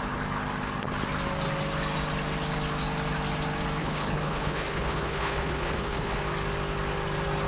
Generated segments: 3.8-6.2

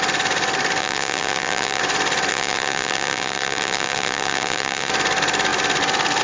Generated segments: 0.8-1.8; 2.3-4.9

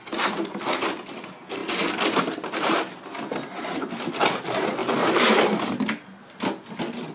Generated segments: 4.8-5.4

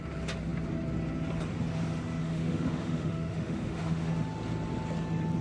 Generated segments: 2.2-4.1

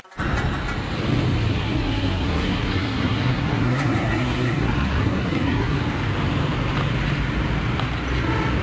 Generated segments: 1.5-5.8

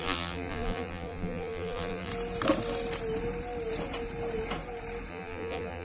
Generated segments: 0.0-2.1; 5.1-5.8